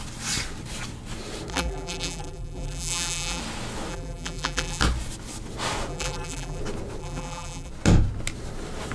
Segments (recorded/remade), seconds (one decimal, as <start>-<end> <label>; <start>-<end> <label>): 0.0-1.5 recorded; 1.5-3.4 remade; 3.4-3.9 recorded; 3.9-4.8 remade; 4.8-5.9 recorded; 5.9-6.6 remade; 6.6-7.0 recorded; 7.0-7.7 remade; 7.7-8.9 recorded